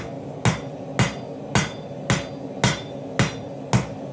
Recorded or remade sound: recorded